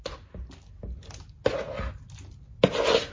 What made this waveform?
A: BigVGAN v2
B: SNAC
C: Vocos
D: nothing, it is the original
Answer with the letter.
D